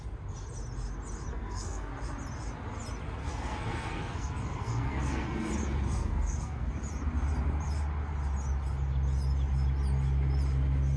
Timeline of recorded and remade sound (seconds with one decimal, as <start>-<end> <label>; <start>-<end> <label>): 0.0-1.3 recorded; 1.3-1.9 remade; 1.9-3.2 recorded; 3.2-5.5 remade; 5.5-5.9 recorded; 5.9-6.7 remade; 6.7-11.0 recorded